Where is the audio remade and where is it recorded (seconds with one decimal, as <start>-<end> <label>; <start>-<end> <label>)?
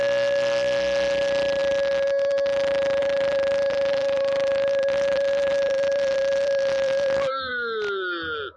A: 0.0-3.0 recorded; 3.0-7.5 remade; 7.5-8.6 recorded